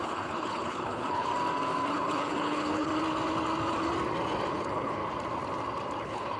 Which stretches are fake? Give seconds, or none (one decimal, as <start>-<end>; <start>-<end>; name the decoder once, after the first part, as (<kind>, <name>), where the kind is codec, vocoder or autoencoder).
0.0-1.3 (codec, HILCodec); 1.9-2.9; 4.5-5.0; 6.0-6.4